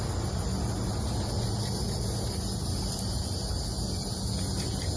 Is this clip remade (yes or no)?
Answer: no